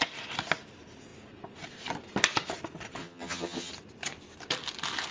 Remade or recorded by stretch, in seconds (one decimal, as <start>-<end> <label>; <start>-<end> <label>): 0.0-3.0 recorded; 3.0-3.7 remade; 3.7-5.1 recorded